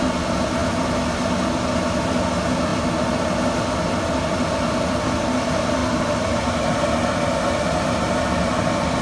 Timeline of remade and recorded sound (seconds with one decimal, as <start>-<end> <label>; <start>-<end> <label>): 0.0-9.0 recorded